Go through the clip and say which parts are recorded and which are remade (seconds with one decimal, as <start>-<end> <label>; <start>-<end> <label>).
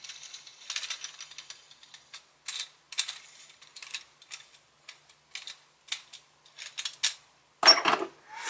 0.0-8.5 recorded